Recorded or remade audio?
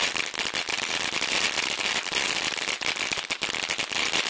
recorded